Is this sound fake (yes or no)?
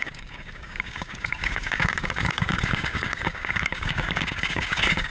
yes